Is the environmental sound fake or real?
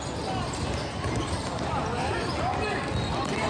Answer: real